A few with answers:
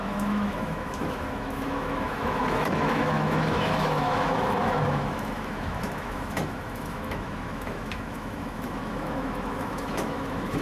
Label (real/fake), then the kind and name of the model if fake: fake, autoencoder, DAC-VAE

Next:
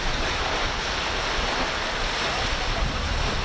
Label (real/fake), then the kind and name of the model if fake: real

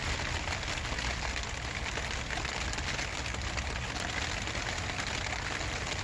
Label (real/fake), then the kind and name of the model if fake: real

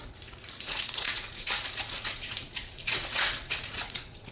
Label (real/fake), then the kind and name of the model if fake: fake, vocoder, Vocos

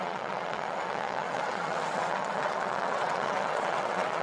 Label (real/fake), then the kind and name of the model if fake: fake, vocoder, WaveNeXt